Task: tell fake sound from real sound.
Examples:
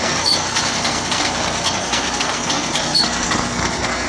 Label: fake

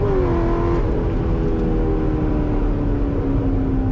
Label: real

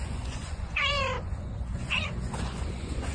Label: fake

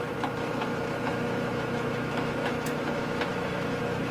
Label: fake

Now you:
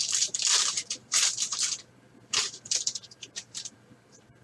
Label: fake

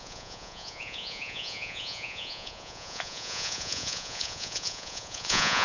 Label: fake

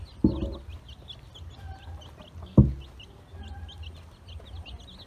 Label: real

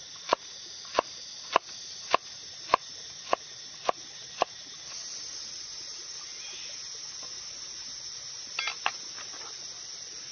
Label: real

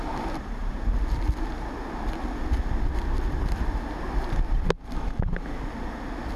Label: real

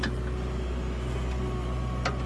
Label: real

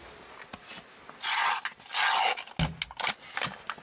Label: real